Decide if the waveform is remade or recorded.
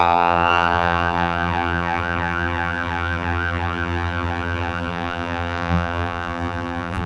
remade